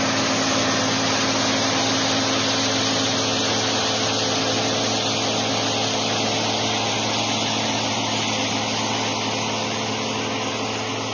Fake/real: real